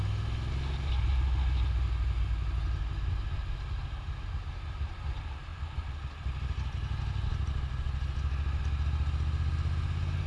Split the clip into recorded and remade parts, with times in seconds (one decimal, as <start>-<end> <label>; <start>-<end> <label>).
0.0-10.3 recorded